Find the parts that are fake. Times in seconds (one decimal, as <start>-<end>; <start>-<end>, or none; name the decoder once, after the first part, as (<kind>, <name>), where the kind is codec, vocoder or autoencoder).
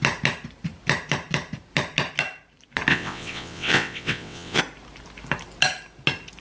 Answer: 2.9-4.6 (vocoder, WaveNeXt)